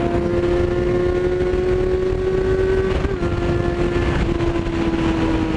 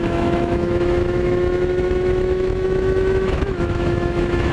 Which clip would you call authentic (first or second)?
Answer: first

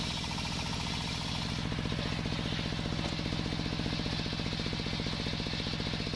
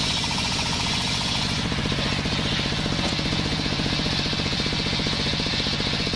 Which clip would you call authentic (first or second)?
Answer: first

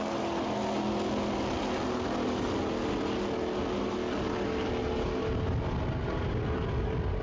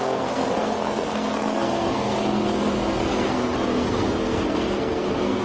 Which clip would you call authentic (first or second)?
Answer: first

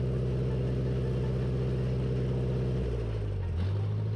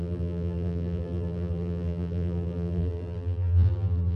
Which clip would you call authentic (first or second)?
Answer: first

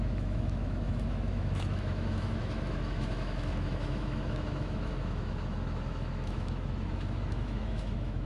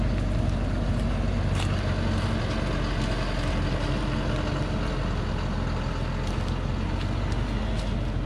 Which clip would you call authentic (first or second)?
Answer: second